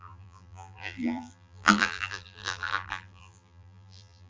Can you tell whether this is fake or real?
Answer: fake